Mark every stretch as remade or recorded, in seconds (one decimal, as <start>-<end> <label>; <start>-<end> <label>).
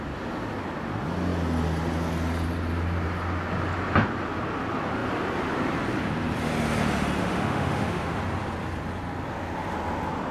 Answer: 0.0-7.2 recorded; 7.2-8.2 remade; 8.2-10.3 recorded